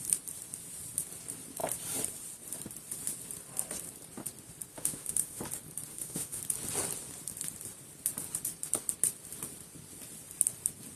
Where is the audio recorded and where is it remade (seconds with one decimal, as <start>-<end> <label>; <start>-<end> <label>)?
0.0-4.7 recorded; 4.7-5.4 remade; 5.4-5.9 recorded; 5.9-6.4 remade; 6.4-11.0 recorded